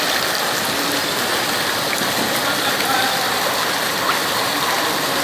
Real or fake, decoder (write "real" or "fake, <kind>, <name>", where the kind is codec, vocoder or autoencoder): real